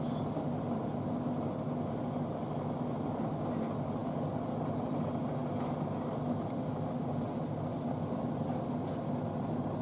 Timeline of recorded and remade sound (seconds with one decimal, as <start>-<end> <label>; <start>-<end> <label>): 0.0-9.8 recorded